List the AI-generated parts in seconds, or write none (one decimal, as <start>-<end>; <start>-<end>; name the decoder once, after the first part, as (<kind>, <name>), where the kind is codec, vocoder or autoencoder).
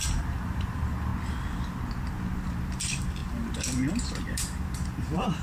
0.0-1.1 (vocoder, BigVGAN v2); 2.4-5.4